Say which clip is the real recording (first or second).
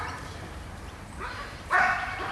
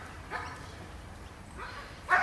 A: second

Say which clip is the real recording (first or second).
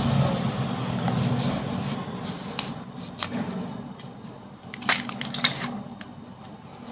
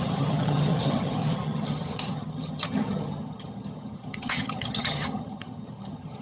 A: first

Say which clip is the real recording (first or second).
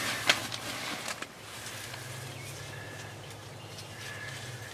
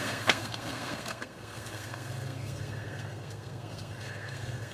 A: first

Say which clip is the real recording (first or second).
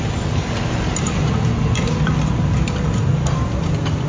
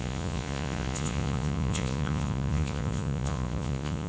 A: first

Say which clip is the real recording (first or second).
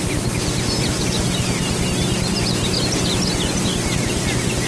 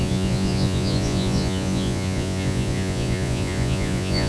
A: first